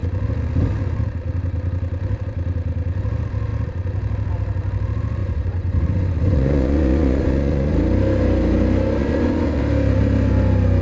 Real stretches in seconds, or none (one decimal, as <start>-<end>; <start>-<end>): 0.0-5.2; 7.7-9.0; 9.6-10.8